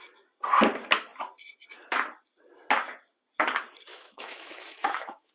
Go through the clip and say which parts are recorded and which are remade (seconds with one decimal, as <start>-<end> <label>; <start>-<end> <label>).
0.0-3.9 recorded; 3.9-5.3 remade